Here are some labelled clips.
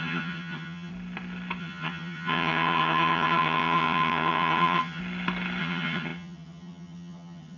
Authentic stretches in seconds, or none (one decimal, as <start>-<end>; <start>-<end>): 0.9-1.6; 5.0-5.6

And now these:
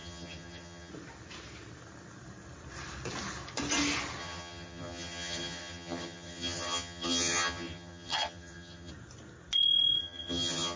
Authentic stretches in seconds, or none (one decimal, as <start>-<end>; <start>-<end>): 0.9-4.2; 8.9-10.0

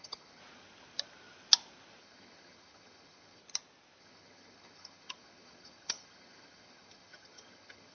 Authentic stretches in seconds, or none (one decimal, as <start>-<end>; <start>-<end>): 0.4-2.0; 3.4-4.0

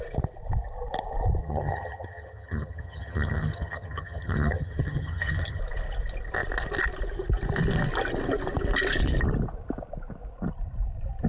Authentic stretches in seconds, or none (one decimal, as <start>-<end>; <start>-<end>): 0.0-1.4; 5.6-11.3

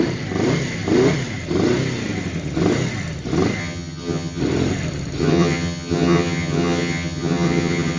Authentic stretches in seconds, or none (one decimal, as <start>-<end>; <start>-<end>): 0.0-3.6; 4.4-5.2

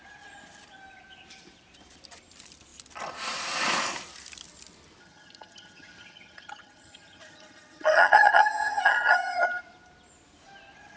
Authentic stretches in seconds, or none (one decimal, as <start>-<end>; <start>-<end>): 0.0-5.0; 9.6-11.0